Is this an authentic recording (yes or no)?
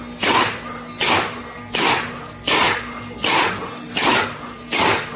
yes